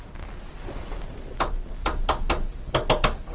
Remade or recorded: recorded